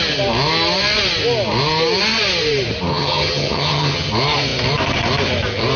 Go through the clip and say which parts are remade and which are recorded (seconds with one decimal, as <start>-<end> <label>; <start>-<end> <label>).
0.0-2.9 recorded; 2.9-4.1 remade; 4.1-5.8 recorded